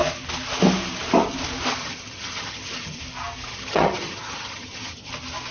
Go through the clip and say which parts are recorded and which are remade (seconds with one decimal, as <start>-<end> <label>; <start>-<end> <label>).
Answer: 0.0-1.8 recorded; 1.8-3.0 remade; 3.0-3.5 recorded; 3.5-5.1 remade; 5.1-5.5 recorded